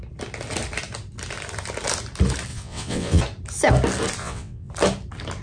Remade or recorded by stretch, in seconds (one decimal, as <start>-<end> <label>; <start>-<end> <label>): 0.0-2.5 recorded; 2.5-3.2 remade; 3.2-4.2 recorded; 4.2-4.7 remade; 4.7-5.4 recorded